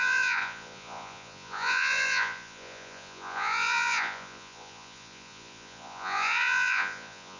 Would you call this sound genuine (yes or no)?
no